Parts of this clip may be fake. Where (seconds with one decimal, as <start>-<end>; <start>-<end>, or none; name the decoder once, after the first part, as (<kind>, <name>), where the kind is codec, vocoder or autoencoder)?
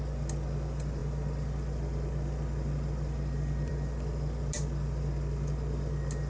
none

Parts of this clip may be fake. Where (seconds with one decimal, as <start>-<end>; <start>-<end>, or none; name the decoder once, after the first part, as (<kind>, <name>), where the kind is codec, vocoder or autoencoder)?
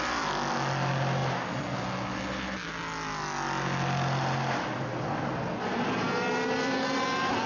none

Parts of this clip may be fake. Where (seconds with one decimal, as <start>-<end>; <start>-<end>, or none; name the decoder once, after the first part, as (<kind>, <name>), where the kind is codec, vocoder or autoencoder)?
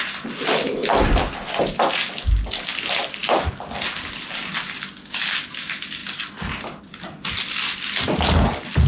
none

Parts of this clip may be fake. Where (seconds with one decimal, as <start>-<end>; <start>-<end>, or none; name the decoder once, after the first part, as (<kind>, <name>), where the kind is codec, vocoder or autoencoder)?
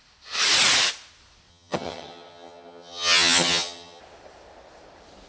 1.5-4.0 (vocoder, HiFi-GAN)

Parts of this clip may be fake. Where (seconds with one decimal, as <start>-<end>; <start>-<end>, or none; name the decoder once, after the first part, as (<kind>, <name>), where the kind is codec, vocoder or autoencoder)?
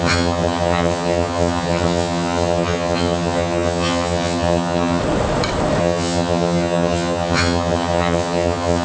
0.0-5.0 (vocoder, HiFi-GAN); 5.8-8.8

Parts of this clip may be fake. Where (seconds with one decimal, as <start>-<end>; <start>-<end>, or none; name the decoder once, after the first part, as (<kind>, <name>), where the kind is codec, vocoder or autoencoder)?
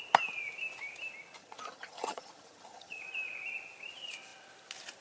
1.4-3.0 (vocoder, HiFi-GAN)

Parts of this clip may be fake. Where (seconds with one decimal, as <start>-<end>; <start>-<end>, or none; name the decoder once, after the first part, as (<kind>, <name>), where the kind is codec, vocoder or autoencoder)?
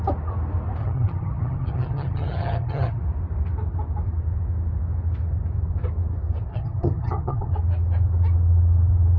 0.8-3.0 (vocoder, HiFi-GAN); 6.5-7.5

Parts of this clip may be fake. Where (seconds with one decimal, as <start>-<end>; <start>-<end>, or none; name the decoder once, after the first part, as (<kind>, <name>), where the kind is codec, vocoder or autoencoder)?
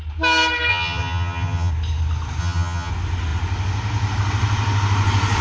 0.7-1.7 (vocoder, HiFi-GAN); 2.4-2.9